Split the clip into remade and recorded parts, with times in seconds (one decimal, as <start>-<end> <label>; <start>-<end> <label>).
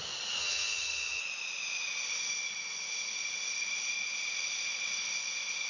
0.0-0.4 recorded; 0.4-1.2 remade; 1.2-5.7 recorded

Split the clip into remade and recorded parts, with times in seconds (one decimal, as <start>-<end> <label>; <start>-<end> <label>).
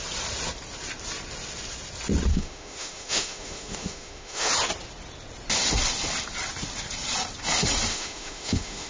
0.0-2.3 recorded; 2.3-4.5 remade; 4.5-7.9 recorded; 7.9-8.9 remade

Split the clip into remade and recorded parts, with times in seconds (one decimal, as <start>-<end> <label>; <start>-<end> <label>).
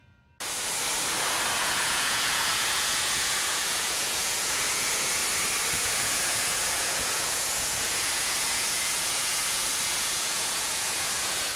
0.0-1.6 recorded; 1.6-5.2 remade; 5.2-5.7 recorded; 5.7-11.6 remade